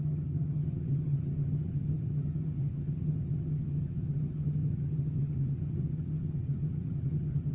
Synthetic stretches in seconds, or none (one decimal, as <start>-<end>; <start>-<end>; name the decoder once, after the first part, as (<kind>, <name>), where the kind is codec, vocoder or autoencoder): 0.0-7.5 (vocoder, HiFi-GAN)